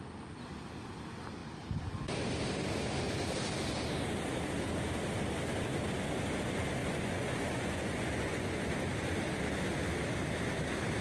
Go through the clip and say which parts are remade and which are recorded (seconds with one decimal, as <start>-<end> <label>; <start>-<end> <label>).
0.0-6.8 recorded; 6.8-8.7 remade; 8.7-11.0 recorded